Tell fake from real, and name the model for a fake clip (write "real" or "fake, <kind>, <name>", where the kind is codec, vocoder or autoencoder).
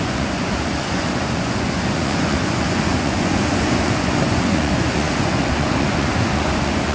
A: fake, vocoder, Vocos